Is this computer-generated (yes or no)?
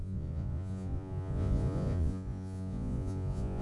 yes